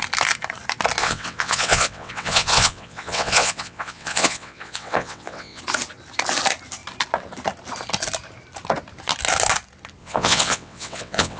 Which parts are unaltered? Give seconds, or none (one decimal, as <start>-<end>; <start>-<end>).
0.0-1.0; 5.6-10.0